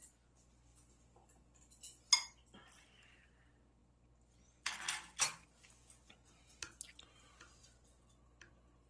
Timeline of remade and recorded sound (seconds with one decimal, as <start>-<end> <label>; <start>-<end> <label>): 0.0-8.9 recorded

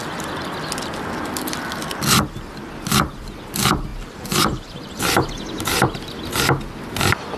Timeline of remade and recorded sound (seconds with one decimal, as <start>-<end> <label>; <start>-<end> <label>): 0.0-3.9 recorded; 3.9-5.0 remade; 5.0-7.4 recorded

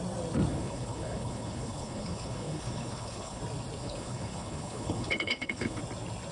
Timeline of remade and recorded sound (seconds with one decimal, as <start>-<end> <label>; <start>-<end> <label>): 0.0-0.5 recorded; 0.5-3.4 remade; 3.4-3.8 recorded; 3.8-5.8 remade; 5.8-6.3 recorded